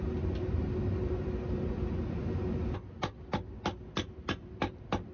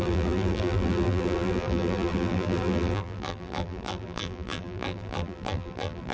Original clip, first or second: first